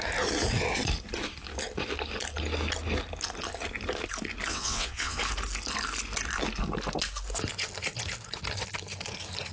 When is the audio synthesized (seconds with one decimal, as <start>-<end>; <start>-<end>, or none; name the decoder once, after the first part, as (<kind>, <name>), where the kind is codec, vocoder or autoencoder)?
4.5-5.2 (vocoder, WaveNeXt)